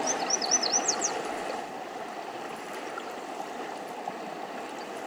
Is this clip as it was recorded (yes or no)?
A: no